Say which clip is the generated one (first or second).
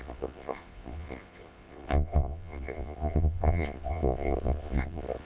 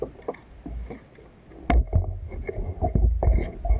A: first